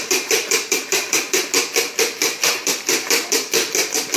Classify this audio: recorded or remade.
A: recorded